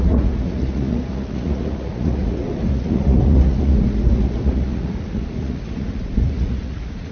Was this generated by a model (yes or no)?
yes